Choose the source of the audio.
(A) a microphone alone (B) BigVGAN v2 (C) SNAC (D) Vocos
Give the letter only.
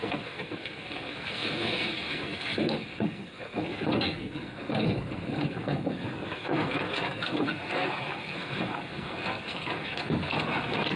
C